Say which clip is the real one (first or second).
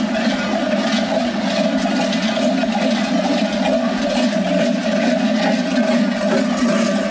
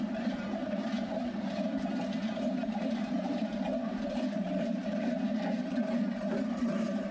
first